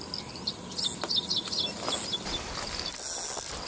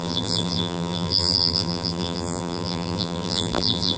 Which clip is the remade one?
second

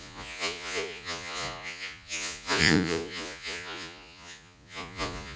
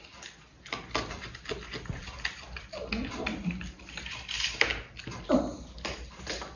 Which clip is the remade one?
first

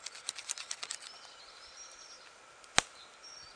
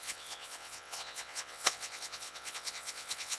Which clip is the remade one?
second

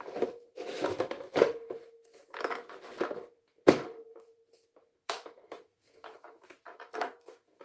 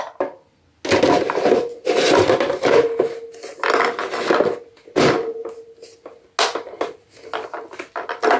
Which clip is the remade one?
first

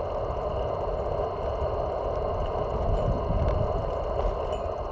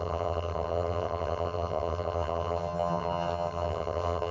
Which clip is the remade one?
second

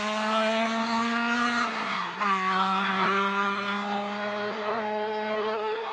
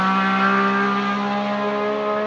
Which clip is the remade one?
first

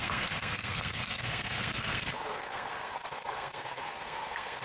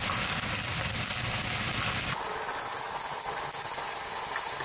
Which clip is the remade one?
first